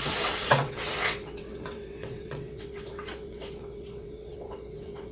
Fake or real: fake